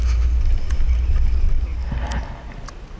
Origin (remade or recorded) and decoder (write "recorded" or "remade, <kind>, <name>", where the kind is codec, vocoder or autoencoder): recorded